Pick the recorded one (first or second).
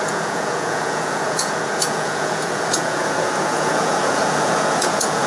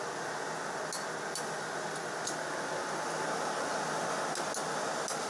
second